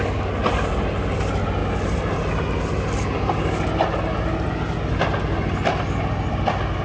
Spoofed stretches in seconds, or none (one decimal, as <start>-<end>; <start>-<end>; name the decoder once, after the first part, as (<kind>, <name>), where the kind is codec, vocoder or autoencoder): none